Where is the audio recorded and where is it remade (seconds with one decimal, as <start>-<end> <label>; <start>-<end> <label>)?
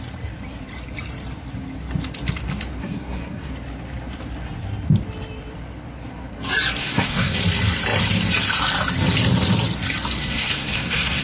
0.0-2.8 recorded; 2.8-3.5 remade; 3.5-6.8 recorded; 6.8-7.4 remade; 7.4-10.2 recorded; 10.2-11.2 remade